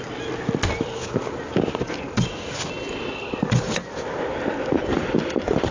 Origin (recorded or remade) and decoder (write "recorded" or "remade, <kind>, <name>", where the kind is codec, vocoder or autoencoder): recorded